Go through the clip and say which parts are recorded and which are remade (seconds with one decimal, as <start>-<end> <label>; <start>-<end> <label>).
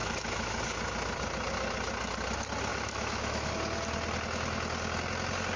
0.0-0.6 remade; 0.6-2.7 recorded; 2.7-3.5 remade; 3.5-5.6 recorded